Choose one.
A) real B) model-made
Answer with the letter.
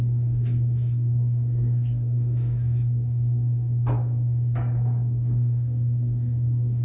B